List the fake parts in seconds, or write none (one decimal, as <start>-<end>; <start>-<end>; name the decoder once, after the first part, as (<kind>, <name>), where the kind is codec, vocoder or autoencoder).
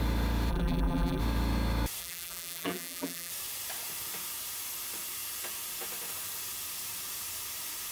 0.5-1.2 (vocoder, BigVGAN v2); 2.0-3.3